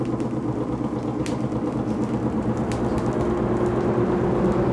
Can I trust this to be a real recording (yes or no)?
yes